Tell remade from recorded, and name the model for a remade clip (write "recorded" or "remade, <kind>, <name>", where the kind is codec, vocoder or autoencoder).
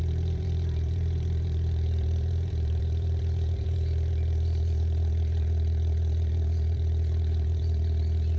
remade, vocoder, BigVGAN v2